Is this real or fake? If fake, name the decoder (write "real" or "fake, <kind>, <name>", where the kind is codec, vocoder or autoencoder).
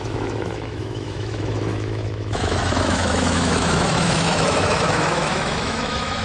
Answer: fake, autoencoder, DAC-VAE